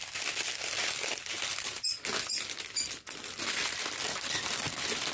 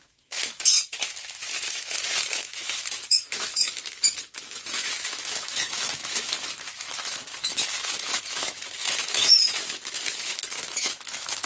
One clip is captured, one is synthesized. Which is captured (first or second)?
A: first